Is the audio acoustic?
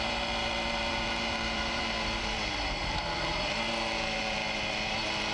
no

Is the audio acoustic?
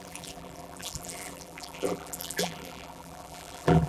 no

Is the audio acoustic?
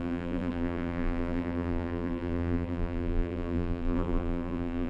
no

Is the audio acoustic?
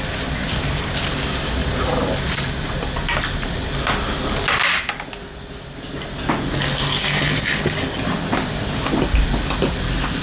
yes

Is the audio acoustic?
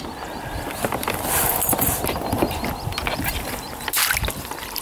yes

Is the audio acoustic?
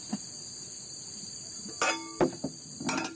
yes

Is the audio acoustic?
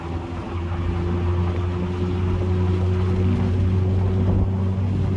yes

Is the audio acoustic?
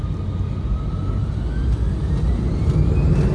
yes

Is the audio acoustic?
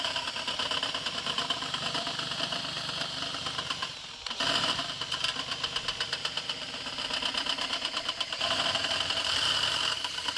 no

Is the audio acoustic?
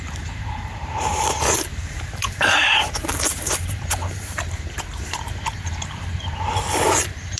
no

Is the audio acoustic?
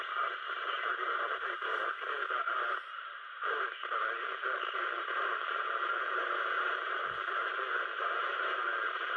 no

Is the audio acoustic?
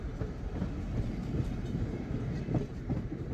no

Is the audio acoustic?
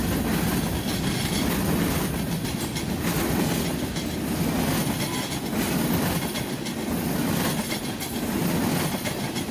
yes